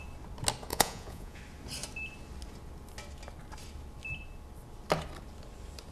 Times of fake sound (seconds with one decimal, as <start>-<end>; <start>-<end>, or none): 0.7-1.4